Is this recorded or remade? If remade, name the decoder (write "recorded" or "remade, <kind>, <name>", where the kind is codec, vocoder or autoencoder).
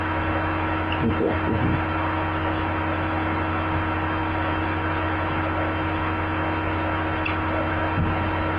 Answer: recorded